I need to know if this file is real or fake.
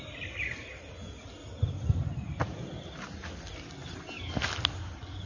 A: real